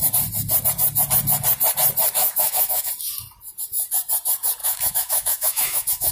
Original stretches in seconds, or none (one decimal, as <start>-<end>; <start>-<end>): 0.0-2.2; 2.9-4.6